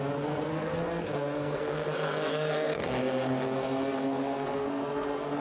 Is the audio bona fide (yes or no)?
no